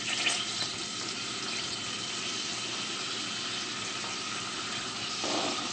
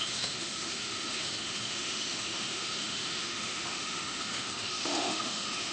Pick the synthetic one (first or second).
second